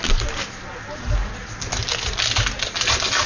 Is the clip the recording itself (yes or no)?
yes